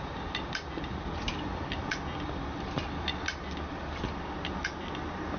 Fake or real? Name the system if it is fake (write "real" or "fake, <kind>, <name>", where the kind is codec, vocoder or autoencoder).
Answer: real